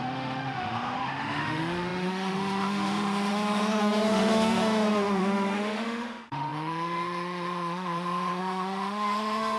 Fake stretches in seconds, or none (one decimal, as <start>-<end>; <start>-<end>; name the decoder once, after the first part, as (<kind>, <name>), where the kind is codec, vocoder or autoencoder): 0.0-9.6 (autoencoder, DAC-VAE)